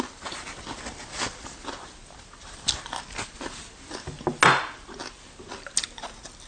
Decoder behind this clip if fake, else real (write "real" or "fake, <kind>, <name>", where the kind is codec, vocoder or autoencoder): real